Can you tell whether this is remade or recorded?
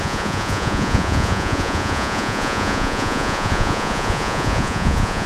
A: remade